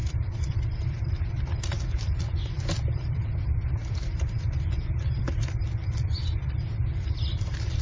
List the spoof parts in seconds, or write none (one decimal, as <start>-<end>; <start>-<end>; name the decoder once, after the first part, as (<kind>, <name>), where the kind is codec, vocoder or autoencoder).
0.0-1.8 (vocoder, BigVGAN v2)